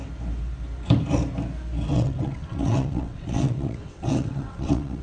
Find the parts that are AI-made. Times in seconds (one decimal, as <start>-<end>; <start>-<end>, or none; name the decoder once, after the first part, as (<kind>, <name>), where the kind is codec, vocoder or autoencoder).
1.9-5.0 (vocoder, WaveNeXt)